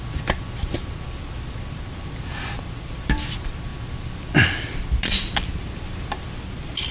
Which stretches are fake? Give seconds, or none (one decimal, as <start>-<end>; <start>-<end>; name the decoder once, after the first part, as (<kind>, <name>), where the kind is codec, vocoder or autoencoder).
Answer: none